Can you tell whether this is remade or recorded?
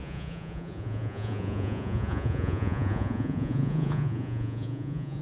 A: remade